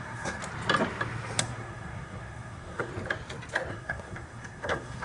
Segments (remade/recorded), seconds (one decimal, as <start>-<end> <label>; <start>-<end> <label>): 0.0-0.4 remade; 0.4-1.4 recorded; 1.4-2.9 remade; 2.9-3.7 recorded; 3.7-5.0 remade